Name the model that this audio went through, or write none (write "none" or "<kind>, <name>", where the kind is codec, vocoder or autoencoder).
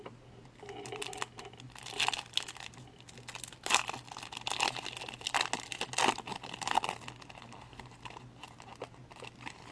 none